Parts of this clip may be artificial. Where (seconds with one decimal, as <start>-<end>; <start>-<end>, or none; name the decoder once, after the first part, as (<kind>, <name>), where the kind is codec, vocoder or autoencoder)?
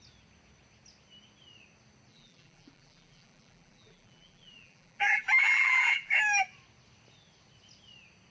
2.1-6.1 (vocoder, BigVGAN v2)